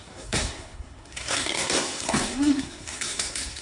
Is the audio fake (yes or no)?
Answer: yes